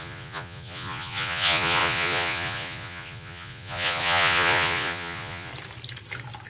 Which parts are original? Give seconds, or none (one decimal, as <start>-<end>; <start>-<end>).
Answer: 5.5-6.5